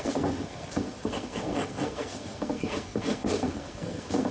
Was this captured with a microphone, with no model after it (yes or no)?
no